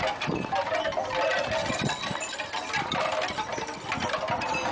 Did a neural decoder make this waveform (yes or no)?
yes